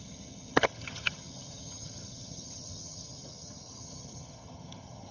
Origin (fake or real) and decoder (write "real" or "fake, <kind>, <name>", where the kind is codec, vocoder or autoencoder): fake, vocoder, HiFi-GAN